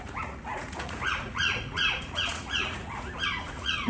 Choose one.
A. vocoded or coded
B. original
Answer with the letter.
A